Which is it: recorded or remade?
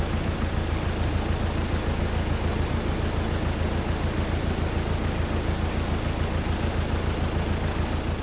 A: recorded